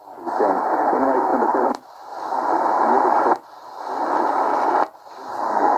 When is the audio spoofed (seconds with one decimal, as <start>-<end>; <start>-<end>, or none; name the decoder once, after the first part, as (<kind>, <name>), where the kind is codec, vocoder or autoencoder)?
1.3-3.8 (vocoder, BigVGAN v2)